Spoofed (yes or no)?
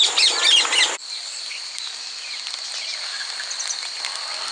no